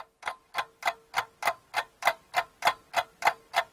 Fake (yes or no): no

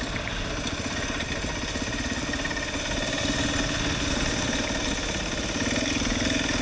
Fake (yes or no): no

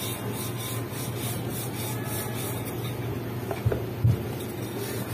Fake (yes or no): no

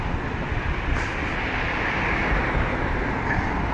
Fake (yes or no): no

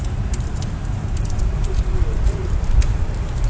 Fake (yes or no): yes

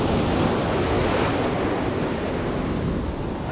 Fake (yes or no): no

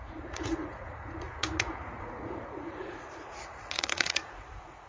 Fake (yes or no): yes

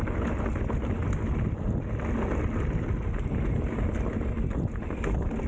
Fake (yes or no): no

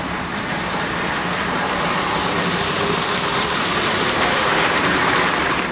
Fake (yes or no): yes